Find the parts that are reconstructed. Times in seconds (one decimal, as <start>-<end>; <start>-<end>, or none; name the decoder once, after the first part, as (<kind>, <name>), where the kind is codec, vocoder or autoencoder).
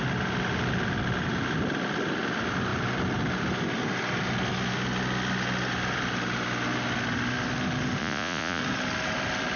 8.0-8.6 (vocoder, Vocos)